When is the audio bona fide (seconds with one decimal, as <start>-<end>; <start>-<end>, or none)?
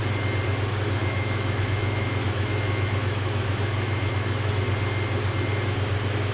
0.0-1.0; 4.5-6.3